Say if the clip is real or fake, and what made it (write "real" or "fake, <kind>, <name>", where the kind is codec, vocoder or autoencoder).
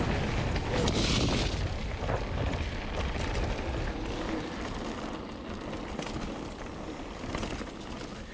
real